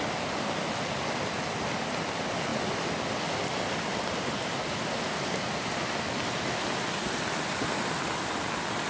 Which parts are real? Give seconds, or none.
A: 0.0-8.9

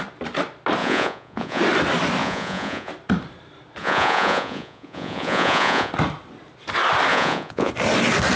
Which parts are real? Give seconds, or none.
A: 0.0-0.8; 1.6-2.2; 2.9-3.8; 5.9-7.1; 7.7-8.4

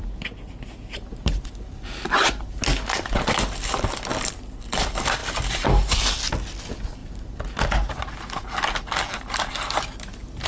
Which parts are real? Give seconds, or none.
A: 0.0-10.5